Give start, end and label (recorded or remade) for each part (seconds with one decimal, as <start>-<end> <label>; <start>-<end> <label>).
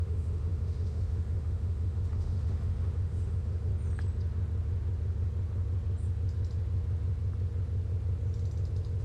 0.0-3.7 remade; 3.7-9.0 recorded